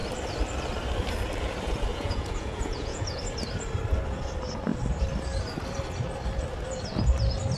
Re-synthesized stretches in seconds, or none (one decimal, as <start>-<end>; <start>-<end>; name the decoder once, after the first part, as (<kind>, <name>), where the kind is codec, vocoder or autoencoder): 1.9-3.2 (vocoder, Vocos)